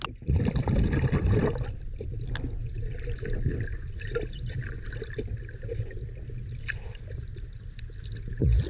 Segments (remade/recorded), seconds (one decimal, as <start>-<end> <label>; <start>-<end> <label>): 0.0-8.7 recorded